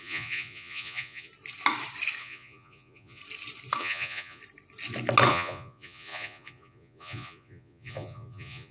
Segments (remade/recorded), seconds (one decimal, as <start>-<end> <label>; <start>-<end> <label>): 0.0-1.3 remade; 1.3-2.2 recorded; 2.2-3.2 remade; 3.2-3.8 recorded; 3.8-4.4 remade; 4.4-5.3 recorded; 5.3-8.7 remade